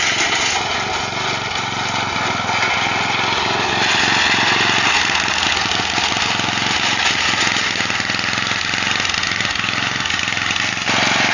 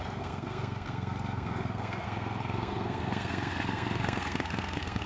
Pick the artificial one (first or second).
second